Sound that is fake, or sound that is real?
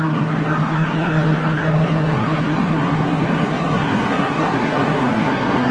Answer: fake